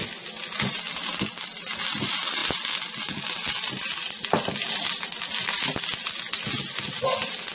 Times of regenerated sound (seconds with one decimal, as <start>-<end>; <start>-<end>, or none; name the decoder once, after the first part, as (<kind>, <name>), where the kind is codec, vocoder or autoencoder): none